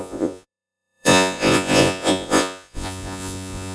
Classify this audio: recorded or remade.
remade